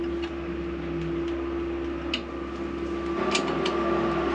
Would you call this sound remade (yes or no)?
no